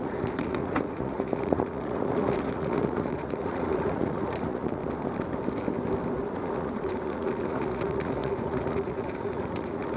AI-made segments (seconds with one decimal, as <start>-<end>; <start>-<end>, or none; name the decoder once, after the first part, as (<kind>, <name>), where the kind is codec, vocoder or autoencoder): 0.0-4.8 (vocoder, Vocos); 6.3-10.0